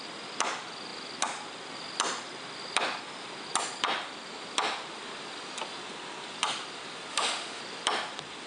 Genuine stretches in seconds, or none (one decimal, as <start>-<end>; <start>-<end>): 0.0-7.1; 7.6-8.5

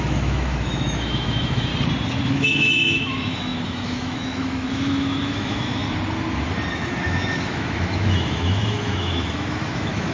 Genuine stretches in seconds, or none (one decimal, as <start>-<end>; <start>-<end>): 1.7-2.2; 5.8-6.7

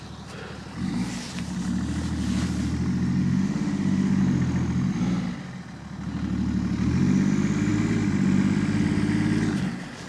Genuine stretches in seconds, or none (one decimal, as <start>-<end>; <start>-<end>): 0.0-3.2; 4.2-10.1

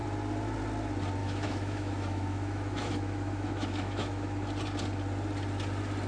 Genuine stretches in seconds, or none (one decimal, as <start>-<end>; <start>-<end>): 0.0-1.2; 4.5-6.1

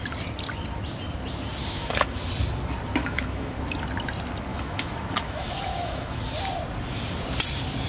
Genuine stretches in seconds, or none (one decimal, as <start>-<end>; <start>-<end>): 0.0-1.6; 2.3-3.0; 3.6-4.5; 6.2-7.9

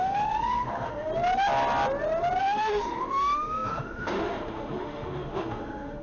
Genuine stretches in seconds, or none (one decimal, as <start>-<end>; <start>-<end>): 1.1-2.4

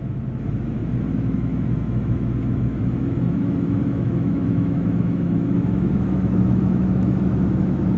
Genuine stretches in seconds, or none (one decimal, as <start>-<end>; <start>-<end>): none

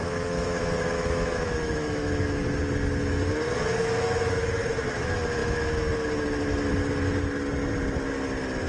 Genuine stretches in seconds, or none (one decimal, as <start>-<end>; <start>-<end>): 2.6-3.8; 4.7-8.7